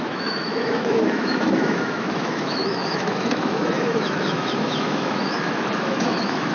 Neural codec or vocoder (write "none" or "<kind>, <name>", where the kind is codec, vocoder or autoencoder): autoencoder, DAC-VAE